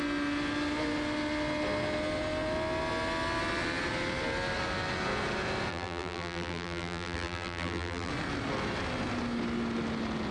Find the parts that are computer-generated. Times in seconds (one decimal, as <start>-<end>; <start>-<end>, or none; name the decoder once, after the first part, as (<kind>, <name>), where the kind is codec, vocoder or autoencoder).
5.7-8.1 (vocoder, BigVGAN v2)